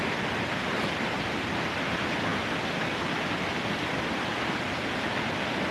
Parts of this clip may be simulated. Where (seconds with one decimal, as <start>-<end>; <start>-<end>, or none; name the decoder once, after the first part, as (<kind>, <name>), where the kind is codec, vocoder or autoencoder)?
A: none